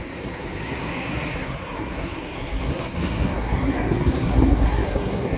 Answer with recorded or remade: remade